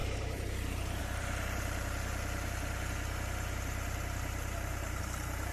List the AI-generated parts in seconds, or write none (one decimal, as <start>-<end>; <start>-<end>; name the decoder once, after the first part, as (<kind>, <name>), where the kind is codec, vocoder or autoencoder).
0.0-5.5 (vocoder, BigVGAN v2)